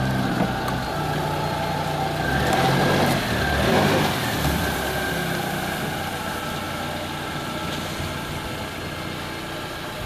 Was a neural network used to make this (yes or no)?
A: no